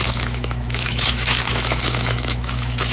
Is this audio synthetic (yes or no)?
yes